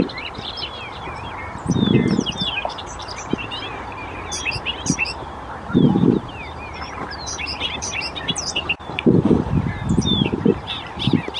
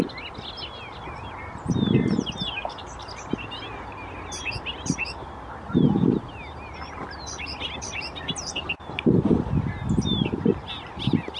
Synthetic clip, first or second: first